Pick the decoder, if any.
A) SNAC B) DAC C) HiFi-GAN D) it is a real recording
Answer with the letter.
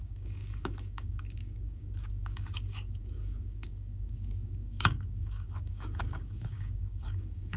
B